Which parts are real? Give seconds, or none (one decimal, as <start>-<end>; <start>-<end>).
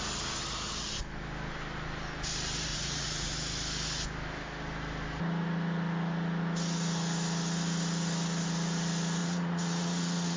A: 0.0-2.7; 3.3-9.2